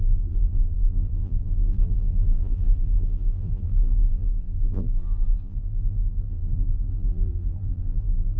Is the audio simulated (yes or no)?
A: yes